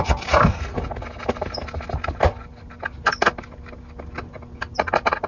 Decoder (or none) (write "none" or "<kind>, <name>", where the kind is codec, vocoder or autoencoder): none